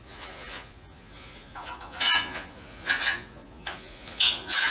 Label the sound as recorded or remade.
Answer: remade